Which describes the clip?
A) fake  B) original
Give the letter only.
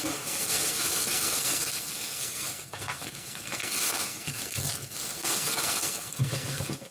A